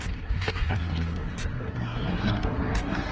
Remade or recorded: remade